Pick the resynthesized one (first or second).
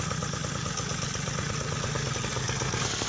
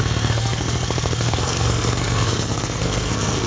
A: second